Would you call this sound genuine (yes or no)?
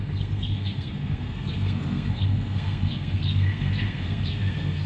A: no